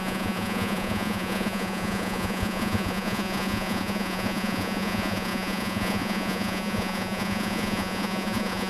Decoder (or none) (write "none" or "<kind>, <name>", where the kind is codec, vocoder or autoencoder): vocoder, Vocos